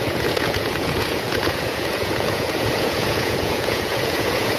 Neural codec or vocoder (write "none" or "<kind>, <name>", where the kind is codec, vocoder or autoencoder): vocoder, Vocos